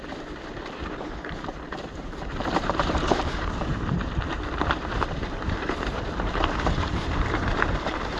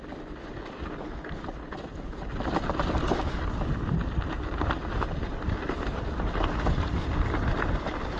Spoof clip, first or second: first